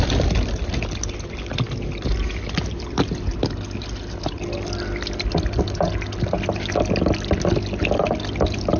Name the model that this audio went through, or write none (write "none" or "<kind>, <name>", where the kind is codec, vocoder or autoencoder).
none